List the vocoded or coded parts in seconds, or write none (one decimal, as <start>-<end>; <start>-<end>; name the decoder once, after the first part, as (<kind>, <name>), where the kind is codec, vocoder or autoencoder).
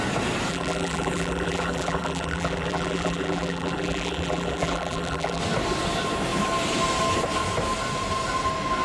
0.5-5.4 (vocoder, BigVGAN v2)